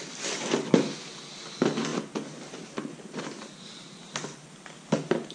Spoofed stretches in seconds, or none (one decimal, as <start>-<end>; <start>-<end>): none